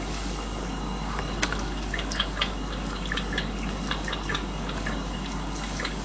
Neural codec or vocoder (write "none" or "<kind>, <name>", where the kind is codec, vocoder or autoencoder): codec, DAC